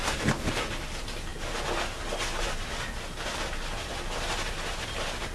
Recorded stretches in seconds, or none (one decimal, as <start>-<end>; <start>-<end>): 0.0-5.3